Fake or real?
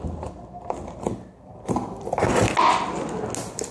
real